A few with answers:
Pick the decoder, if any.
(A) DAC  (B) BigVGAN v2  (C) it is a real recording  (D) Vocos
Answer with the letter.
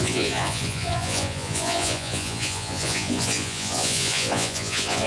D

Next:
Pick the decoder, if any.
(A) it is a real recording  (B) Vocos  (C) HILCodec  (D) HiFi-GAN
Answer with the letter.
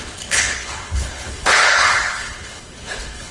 C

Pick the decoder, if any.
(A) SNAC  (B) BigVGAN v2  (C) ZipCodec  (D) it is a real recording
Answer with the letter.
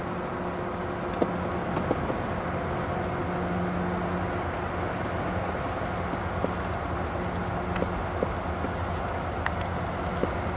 D